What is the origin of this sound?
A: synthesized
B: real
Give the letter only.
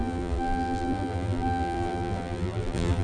A